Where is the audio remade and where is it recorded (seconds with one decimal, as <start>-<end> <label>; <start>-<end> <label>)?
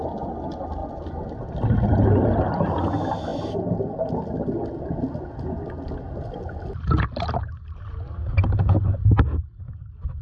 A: 0.0-10.2 recorded